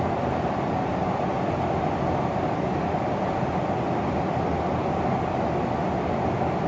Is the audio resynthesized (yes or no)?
no